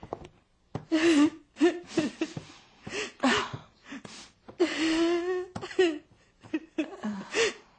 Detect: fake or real real